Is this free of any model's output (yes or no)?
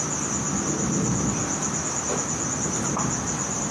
yes